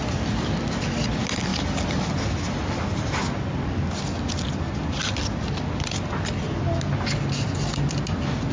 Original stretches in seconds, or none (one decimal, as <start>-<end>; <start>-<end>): 0.0-8.5